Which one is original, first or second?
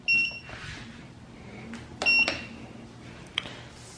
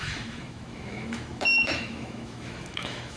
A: first